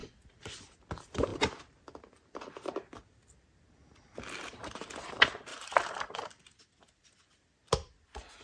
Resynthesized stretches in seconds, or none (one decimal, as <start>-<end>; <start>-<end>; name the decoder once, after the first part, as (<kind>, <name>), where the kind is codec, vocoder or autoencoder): 0.0-0.7 (vocoder, BigVGAN v2); 5.5-6.6